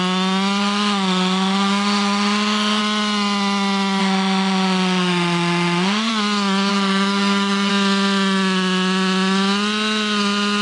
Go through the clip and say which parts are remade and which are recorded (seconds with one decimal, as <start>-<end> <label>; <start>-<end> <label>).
0.0-0.6 recorded; 0.6-2.8 remade; 2.8-4.0 recorded; 4.0-6.1 remade; 6.1-6.7 recorded; 6.7-7.7 remade; 7.7-10.6 recorded